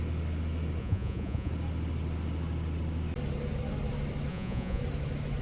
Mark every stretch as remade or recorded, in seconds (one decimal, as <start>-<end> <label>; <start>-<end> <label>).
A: 0.0-0.8 recorded; 0.8-1.5 remade; 1.5-4.3 recorded; 4.3-4.8 remade; 4.8-5.4 recorded